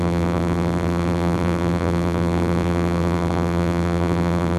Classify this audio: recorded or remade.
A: remade